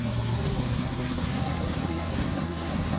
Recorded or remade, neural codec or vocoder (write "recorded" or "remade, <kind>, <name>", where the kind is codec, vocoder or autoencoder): remade, codec, SNAC